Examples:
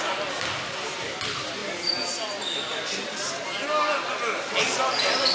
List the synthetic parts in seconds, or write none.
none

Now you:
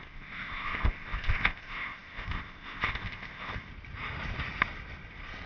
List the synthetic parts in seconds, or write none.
0.0-3.7 (codec, ZipCodec)

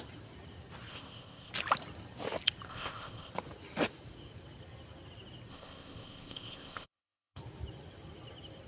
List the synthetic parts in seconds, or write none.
0.9-1.5 (codec, ZipCodec); 2.7-3.3; 5.5-7.4

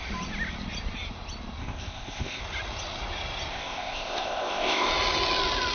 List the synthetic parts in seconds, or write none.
1.6-2.4 (codec, ZipCodec); 3.5-4.9

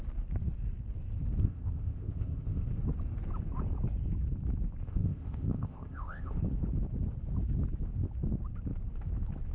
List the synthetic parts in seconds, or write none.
1.4-2.7 (codec, ZipCodec); 4.8-6.4

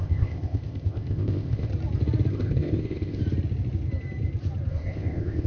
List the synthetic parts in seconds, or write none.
0.0-1.7 (codec, ZipCodec); 2.3-3.2; 4.7-5.5

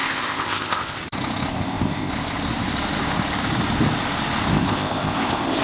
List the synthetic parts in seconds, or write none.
0.0-1.0 (codec, ZipCodec); 1.5-2.1; 4.5-5.6

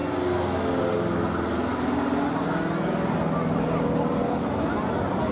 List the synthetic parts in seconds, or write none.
none